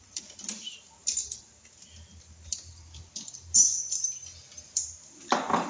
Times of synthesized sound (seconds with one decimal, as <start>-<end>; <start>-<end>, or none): none